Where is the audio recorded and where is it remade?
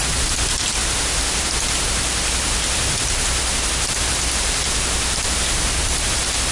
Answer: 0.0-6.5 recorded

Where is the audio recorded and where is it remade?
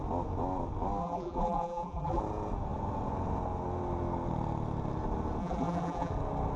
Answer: 0.0-1.0 recorded; 1.0-2.2 remade; 2.2-5.4 recorded; 5.4-6.1 remade; 6.1-6.6 recorded